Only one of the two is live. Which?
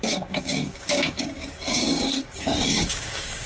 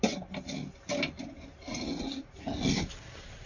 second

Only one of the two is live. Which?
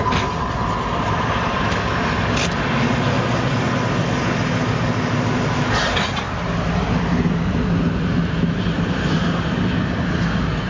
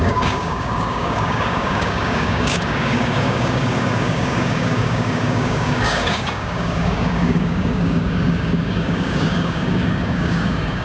first